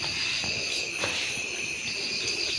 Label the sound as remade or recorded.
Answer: recorded